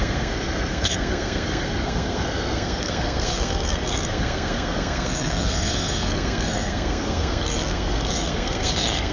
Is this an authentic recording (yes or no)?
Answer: no